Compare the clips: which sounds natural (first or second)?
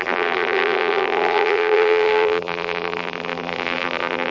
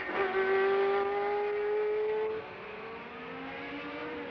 second